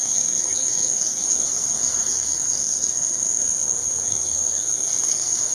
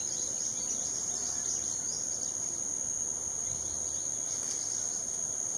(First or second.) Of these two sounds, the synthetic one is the first